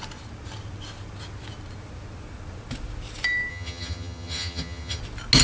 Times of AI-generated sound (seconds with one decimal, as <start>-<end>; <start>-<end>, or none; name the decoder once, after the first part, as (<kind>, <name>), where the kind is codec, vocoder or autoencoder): 3.5-5.0 (vocoder, HiFi-GAN)